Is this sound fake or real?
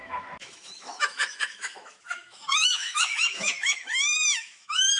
fake